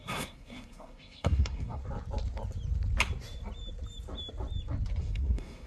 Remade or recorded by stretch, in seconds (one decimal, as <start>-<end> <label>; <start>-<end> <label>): 0.0-1.8 remade; 1.8-5.0 recorded; 5.0-5.7 remade